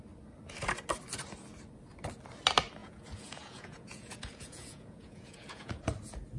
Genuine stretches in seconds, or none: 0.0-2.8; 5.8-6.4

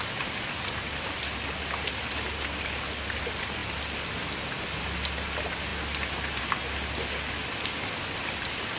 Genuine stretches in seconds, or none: 0.0-8.8

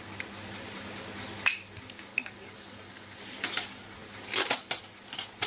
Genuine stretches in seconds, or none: 0.0-2.1; 3.2-5.5